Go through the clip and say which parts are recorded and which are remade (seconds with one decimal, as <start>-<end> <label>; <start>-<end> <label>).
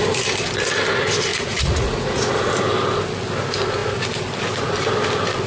0.0-1.3 recorded; 1.3-2.5 remade; 2.5-5.5 recorded